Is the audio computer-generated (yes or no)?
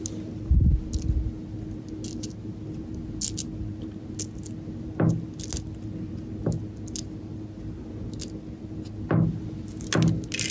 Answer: no